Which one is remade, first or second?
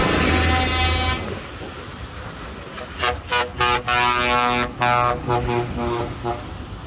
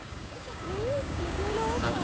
second